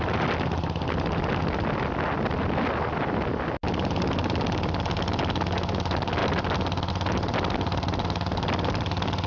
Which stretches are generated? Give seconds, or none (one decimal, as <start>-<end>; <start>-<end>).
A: none